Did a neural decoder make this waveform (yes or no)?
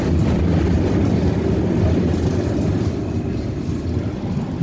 no